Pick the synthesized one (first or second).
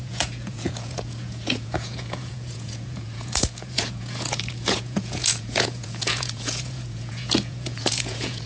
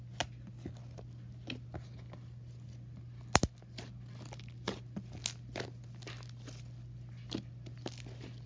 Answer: first